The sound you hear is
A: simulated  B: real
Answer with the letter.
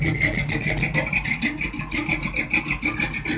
B